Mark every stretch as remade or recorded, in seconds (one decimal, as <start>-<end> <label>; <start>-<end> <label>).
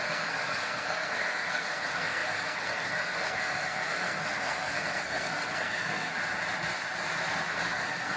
0.0-6.1 remade; 6.1-7.5 recorded; 7.5-8.2 remade